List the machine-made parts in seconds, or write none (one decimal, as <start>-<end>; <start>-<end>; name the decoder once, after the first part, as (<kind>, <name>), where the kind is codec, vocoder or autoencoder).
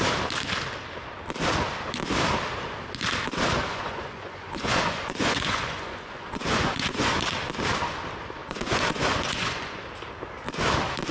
3.7-7.1 (vocoder, Vocos); 8.4-9.8